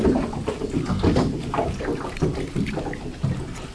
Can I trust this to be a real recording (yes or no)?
yes